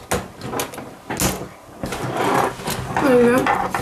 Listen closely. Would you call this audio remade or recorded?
recorded